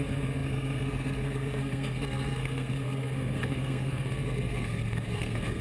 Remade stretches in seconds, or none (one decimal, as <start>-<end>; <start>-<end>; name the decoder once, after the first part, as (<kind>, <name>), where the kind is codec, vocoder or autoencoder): 0.0-5.6 (codec, SNAC)